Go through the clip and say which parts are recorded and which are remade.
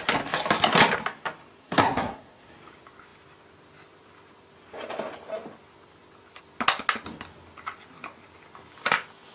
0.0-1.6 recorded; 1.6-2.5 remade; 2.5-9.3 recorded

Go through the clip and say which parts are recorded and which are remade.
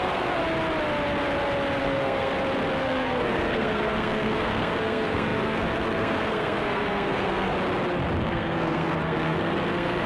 0.0-0.4 remade; 0.4-1.8 recorded; 1.8-2.3 remade; 2.3-2.8 recorded; 2.8-7.5 remade; 7.5-8.2 recorded; 8.2-10.1 remade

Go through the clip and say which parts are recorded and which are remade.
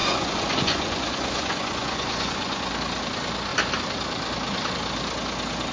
0.0-2.7 remade; 2.7-5.7 recorded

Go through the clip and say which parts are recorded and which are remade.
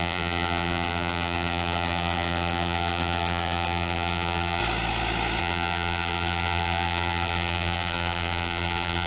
0.0-4.6 remade; 4.6-5.4 recorded; 5.4-9.1 remade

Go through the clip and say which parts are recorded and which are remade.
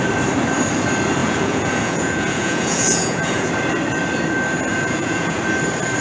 0.0-1.2 recorded; 1.2-3.5 remade; 3.5-4.7 recorded; 4.7-5.4 remade; 5.4-6.0 recorded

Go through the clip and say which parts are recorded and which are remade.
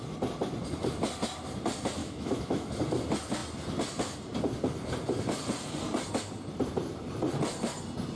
0.0-2.0 recorded; 2.0-2.7 remade; 2.7-8.2 recorded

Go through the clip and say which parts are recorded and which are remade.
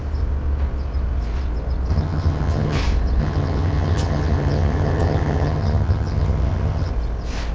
0.0-1.9 recorded; 1.9-2.8 remade; 2.8-3.2 recorded; 3.2-6.9 remade; 6.9-7.5 recorded